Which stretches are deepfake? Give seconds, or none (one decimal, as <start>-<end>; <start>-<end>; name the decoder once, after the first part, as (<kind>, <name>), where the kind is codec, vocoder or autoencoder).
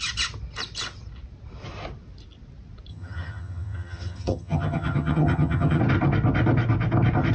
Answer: 2.9-5.8 (vocoder, HiFi-GAN)